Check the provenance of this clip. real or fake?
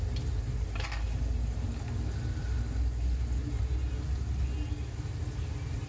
real